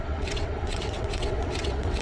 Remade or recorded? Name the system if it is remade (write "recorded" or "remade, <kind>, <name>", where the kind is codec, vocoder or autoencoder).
remade, vocoder, WaveNeXt